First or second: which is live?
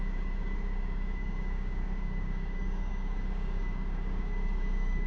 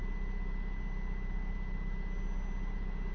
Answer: second